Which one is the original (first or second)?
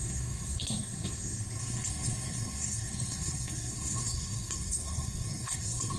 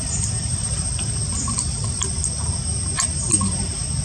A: second